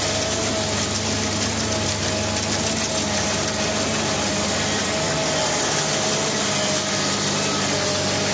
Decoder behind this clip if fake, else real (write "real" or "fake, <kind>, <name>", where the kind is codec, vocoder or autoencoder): real